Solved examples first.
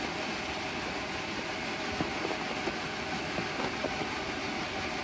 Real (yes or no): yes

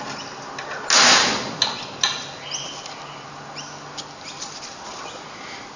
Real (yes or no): yes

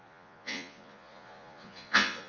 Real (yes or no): no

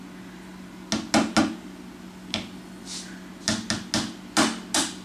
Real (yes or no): yes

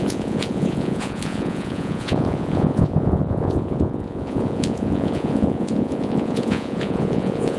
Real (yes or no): no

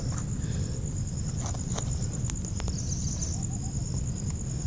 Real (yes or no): yes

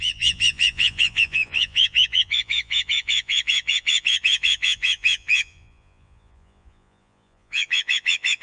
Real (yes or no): no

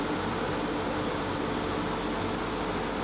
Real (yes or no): yes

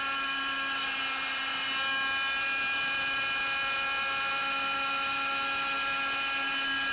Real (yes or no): yes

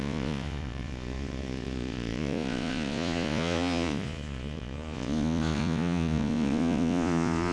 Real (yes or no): no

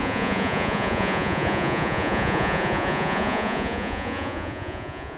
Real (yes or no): no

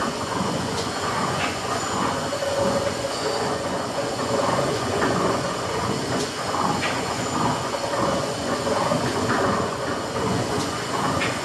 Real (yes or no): no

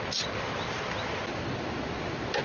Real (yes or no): yes